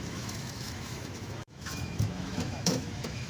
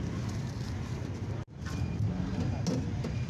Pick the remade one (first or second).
first